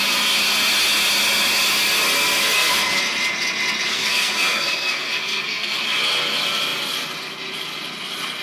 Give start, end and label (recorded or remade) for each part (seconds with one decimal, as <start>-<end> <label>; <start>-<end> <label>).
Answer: 0.0-2.4 recorded; 2.4-3.0 remade; 3.0-3.9 recorded; 3.9-5.8 remade; 5.8-8.4 recorded